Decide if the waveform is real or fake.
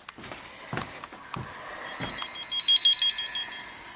real